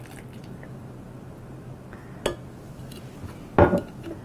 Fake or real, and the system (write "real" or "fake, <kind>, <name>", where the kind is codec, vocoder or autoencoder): real